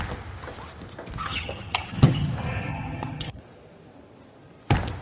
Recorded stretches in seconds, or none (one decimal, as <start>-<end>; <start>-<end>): 0.0-1.2; 2.3-2.7; 3.4-5.0